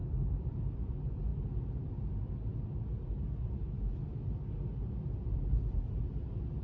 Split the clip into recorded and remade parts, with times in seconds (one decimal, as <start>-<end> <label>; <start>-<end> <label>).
0.0-0.7 remade; 0.7-6.6 recorded